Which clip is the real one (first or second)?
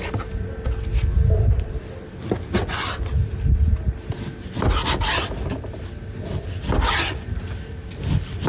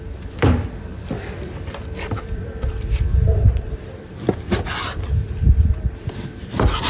first